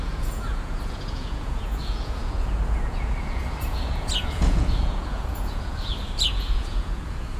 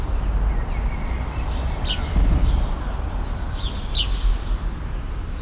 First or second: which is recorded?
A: second